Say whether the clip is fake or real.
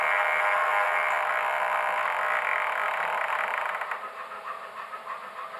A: real